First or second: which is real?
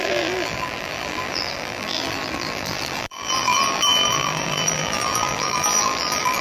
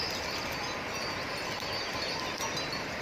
second